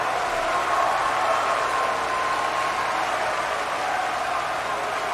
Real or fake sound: real